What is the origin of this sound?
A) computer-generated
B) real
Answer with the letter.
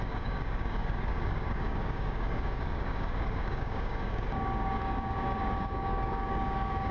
A